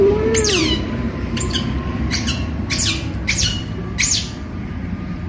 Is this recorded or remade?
remade